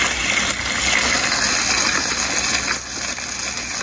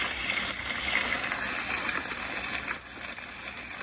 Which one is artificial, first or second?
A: second